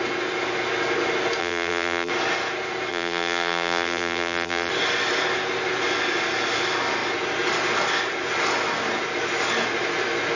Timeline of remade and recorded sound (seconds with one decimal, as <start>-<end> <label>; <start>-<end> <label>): 0.0-1.4 recorded; 1.4-2.1 remade; 2.1-2.9 recorded; 2.9-4.7 remade; 4.7-10.4 recorded